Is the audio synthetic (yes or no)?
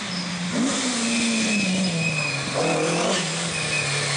no